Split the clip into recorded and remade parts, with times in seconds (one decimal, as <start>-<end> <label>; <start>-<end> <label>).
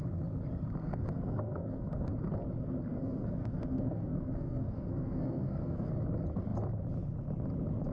0.0-0.8 recorded; 0.8-2.1 remade; 2.1-2.9 recorded; 2.9-5.9 remade; 5.9-7.9 recorded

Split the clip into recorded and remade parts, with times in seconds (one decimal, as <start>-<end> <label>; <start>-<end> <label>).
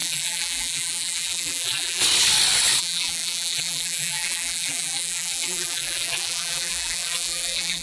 0.0-2.0 remade; 2.0-2.8 recorded; 2.8-7.8 remade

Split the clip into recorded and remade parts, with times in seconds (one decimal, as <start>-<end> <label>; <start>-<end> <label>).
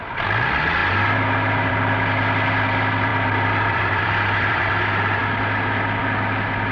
0.0-3.1 recorded; 3.1-4.7 remade; 4.7-6.7 recorded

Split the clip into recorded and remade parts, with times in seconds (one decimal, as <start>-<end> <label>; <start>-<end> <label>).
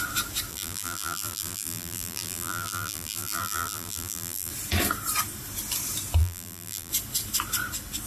0.0-0.5 recorded; 0.5-4.5 remade; 4.5-6.2 recorded; 6.2-6.9 remade; 6.9-8.1 recorded